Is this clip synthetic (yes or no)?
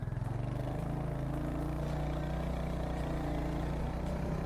no